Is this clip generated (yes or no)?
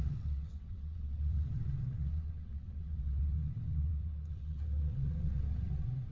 yes